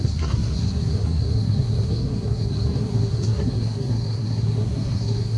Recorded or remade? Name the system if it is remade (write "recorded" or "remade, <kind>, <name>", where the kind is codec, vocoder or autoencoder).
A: remade, codec, SNAC